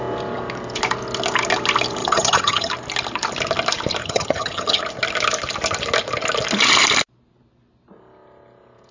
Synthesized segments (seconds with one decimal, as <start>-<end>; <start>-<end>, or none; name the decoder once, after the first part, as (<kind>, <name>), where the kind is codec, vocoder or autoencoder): 2.0-2.7 (vocoder, HiFi-GAN); 4.0-4.8